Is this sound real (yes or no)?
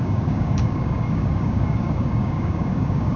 no